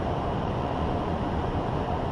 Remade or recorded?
remade